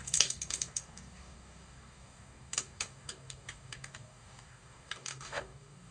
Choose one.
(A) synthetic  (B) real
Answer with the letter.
A